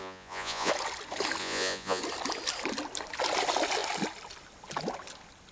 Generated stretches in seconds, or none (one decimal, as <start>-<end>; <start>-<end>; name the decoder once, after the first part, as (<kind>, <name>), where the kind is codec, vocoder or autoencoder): 0.0-0.7 (vocoder, Vocos); 1.4-2.0